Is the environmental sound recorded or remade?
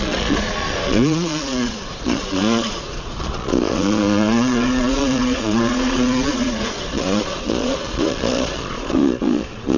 remade